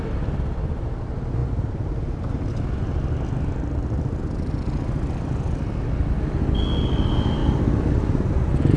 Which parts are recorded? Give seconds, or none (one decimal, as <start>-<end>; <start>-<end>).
0.0-8.8